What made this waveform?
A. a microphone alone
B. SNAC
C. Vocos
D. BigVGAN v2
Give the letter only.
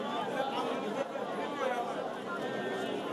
A